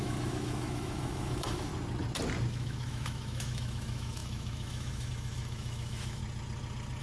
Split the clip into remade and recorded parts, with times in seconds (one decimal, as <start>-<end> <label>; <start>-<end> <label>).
0.0-1.7 remade; 1.7-2.5 recorded; 2.5-6.2 remade; 6.2-7.0 recorded